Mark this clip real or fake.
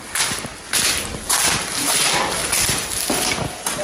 real